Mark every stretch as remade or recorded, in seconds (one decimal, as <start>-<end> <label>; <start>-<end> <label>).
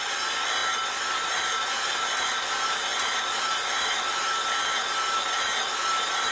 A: 0.0-0.6 recorded; 0.6-1.3 remade; 1.3-2.9 recorded; 2.9-3.5 remade; 3.5-6.3 recorded